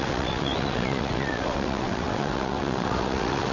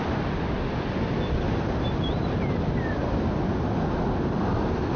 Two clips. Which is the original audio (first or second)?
second